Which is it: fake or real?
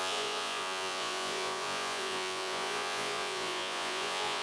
fake